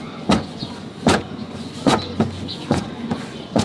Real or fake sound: fake